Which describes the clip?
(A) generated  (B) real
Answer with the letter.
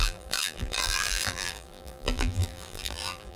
A